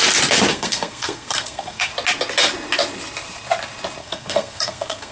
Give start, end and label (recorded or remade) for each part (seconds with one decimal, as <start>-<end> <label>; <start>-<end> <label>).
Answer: 0.0-0.5 recorded; 0.5-1.9 remade; 1.9-4.0 recorded; 4.0-5.1 remade